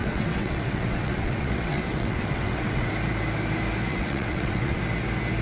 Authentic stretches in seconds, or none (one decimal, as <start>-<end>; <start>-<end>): 2.9-3.9; 4.8-5.4

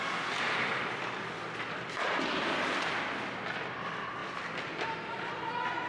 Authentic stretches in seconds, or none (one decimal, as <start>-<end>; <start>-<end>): none